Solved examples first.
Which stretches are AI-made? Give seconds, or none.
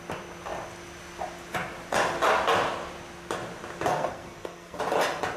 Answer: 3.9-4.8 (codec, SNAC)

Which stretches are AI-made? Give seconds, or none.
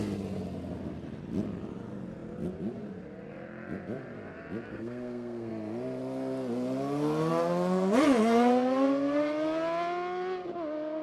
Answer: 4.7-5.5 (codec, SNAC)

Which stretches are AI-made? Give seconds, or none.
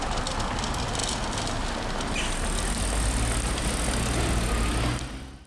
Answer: none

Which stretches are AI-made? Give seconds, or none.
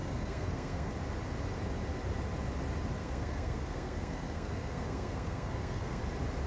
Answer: 0.0-0.9 (codec, SNAC); 3.0-6.0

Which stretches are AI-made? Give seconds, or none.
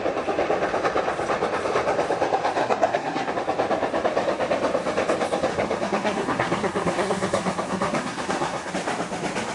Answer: 2.6-3.3 (codec, SNAC); 5.5-8.7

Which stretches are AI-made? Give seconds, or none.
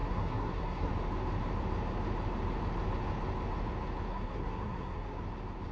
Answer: 0.0-0.9 (codec, SNAC); 4.1-5.2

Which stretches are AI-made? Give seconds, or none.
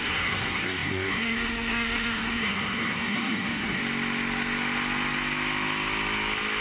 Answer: 0.0-3.8 (codec, SNAC)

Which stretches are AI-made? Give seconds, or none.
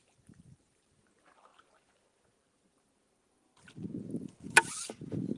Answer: none